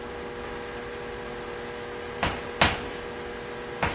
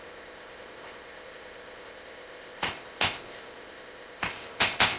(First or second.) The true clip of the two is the first